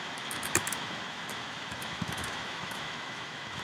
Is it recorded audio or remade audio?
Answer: remade